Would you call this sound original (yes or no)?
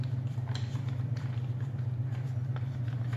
no